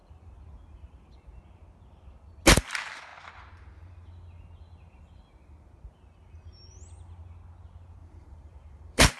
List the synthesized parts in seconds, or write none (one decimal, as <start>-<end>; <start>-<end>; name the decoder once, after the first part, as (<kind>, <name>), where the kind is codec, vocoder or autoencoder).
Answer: 0.0-1.4 (vocoder, BigVGAN v2); 8.0-9.2